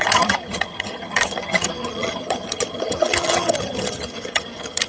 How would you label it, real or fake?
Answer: fake